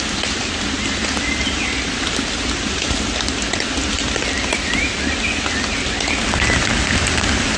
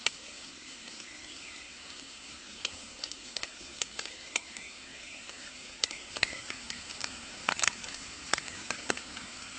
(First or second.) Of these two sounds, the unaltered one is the first